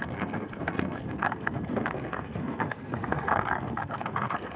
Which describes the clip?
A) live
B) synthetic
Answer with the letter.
B